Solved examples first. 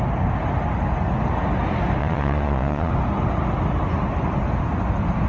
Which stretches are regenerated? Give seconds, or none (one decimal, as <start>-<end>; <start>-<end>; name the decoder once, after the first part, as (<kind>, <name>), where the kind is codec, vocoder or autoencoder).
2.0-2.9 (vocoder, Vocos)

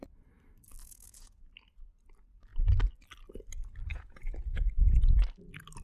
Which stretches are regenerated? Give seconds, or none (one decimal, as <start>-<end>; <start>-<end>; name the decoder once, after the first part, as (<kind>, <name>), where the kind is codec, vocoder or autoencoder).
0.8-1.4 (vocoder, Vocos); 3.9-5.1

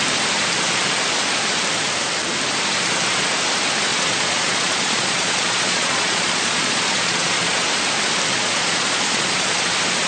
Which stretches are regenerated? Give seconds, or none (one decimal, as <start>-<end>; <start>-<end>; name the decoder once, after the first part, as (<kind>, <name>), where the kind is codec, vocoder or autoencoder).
3.9-7.6 (vocoder, Vocos); 8.3-9.7

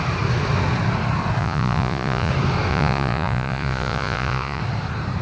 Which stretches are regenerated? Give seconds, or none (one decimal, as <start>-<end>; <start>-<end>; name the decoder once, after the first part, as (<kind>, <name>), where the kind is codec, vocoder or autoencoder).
1.4-2.3 (vocoder, Vocos); 2.7-4.6

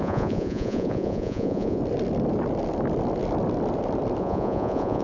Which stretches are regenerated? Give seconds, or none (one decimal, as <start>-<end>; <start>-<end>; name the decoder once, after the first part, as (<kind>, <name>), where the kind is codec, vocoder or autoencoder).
0.0-1.8 (vocoder, Vocos); 4.2-5.0

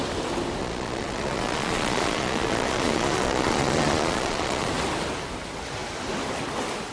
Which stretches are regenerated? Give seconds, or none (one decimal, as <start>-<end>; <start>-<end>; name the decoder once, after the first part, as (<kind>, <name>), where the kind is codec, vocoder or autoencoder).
0.6-4.7 (vocoder, Vocos)

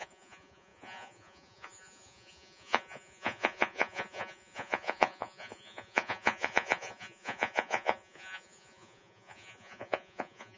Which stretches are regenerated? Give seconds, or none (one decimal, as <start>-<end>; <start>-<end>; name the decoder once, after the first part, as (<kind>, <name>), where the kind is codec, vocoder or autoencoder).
0.0-10.6 (vocoder, Vocos)

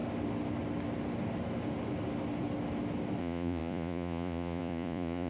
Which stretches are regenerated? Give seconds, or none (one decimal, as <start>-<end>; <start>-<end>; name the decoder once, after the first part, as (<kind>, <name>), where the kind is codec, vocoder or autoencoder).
3.2-5.3 (vocoder, Vocos)